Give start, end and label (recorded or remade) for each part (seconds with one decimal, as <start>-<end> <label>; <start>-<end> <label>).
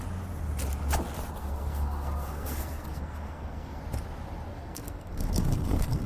0.0-1.4 recorded; 1.4-3.8 remade; 3.8-4.5 recorded; 4.5-6.1 remade